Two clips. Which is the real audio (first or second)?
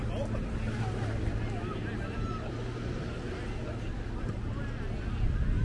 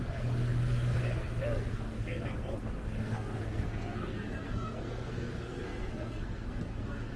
first